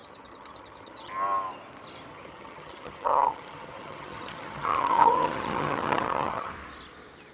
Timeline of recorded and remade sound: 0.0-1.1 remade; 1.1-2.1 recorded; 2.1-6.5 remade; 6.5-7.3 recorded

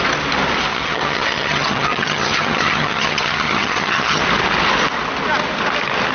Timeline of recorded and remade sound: 0.0-0.7 recorded; 0.7-4.2 remade; 4.2-6.1 recorded

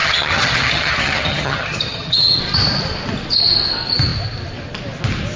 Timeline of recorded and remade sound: 0.0-2.4 remade; 2.4-5.4 recorded

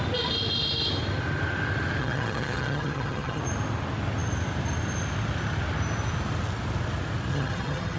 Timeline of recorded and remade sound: 0.0-2.0 recorded; 2.0-3.4 remade; 3.4-7.3 recorded; 7.3-8.0 remade

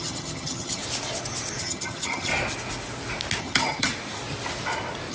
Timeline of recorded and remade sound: 0.0-0.8 remade; 0.8-1.6 recorded; 1.6-2.3 remade; 2.3-3.4 recorded; 3.4-3.9 remade; 3.9-5.1 recorded

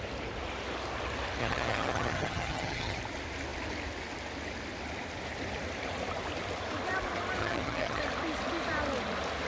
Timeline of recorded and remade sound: 0.0-1.4 recorded; 1.4-3.0 remade; 3.0-7.4 recorded; 7.4-8.0 remade; 8.0-9.5 recorded

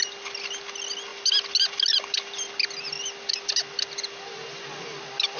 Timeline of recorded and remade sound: 0.0-5.4 recorded

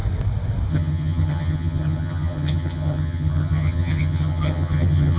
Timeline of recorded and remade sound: 0.0-0.7 recorded; 0.7-5.2 remade